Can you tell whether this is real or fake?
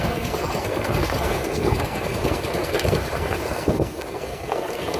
fake